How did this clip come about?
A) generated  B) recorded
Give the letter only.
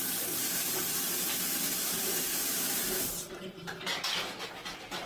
A